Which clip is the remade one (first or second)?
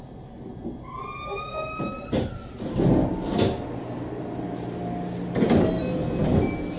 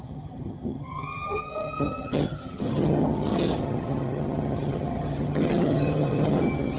second